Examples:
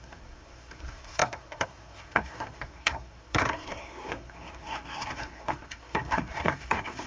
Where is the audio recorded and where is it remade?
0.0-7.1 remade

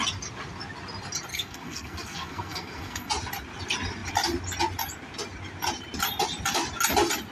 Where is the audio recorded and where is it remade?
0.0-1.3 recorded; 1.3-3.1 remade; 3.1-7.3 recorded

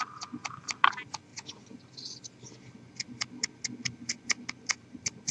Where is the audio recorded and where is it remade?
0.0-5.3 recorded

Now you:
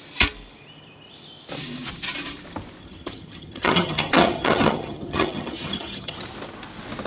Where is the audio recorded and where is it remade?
0.0-2.8 recorded; 2.8-6.2 remade; 6.2-7.1 recorded

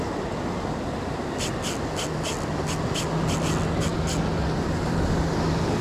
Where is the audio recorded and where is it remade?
0.0-5.8 recorded

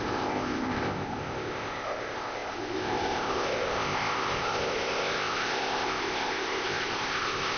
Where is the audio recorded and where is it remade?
0.0-7.6 remade